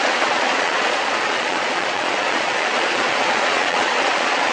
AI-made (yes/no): yes